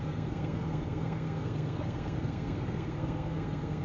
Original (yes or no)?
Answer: no